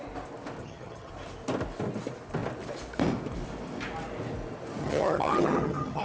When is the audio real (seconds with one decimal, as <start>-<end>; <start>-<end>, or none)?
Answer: 0.0-0.6; 1.1-4.8